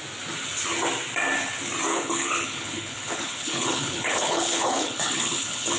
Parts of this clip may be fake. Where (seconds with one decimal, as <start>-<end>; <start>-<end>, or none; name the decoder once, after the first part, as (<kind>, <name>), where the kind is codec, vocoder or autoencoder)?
1.9-5.8 (codec, HILCodec)